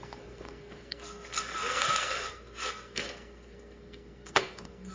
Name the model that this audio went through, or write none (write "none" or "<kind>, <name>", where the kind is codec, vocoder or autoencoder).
codec, SNAC